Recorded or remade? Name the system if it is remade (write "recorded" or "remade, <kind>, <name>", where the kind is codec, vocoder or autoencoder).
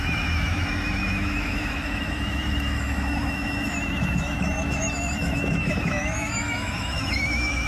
remade, autoencoder, DAC-VAE